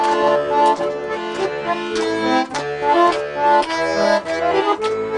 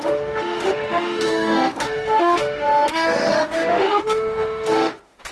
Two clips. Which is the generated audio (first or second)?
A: second